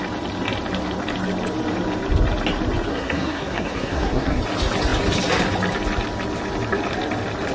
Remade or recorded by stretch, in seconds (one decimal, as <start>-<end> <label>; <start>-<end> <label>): 0.0-2.9 recorded; 2.9-4.4 remade; 4.4-7.5 recorded